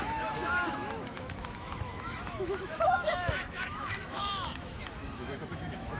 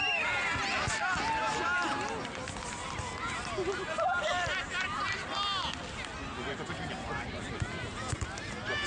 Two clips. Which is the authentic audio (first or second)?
second